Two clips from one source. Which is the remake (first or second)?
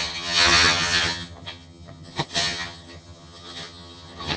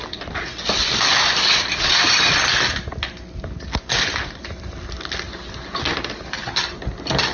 first